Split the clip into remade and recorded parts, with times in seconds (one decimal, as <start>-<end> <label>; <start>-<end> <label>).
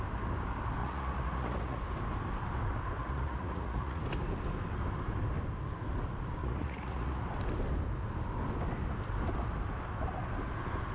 0.0-0.8 recorded; 0.8-1.8 remade; 1.8-3.0 recorded; 3.0-4.0 remade; 4.0-6.4 recorded; 6.4-7.2 remade; 7.2-10.9 recorded